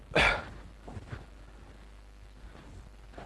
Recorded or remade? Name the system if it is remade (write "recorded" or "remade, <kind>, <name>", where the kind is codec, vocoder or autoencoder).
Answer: recorded